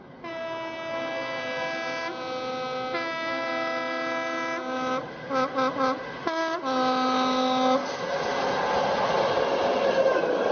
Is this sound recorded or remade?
recorded